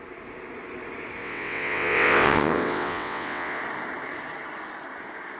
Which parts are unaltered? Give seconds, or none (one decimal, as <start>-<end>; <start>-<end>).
0.0-1.2; 3.6-5.4